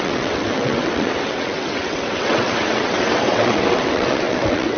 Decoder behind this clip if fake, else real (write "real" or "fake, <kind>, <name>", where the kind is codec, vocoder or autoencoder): fake, vocoder, WaveNeXt